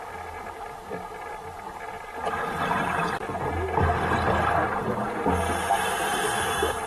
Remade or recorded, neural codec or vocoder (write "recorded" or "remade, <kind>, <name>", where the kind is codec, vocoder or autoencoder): recorded